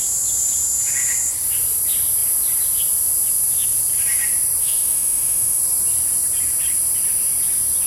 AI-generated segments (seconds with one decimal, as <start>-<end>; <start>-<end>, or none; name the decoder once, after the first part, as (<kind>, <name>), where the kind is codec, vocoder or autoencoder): 4.6-5.6 (autoencoder, DAC-VAE)